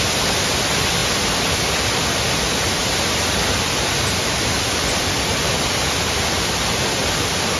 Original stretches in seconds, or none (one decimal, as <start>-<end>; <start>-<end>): 0.0-7.6